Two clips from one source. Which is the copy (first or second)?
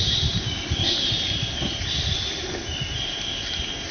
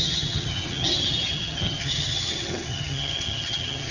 second